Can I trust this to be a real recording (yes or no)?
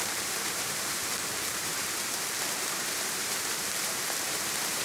no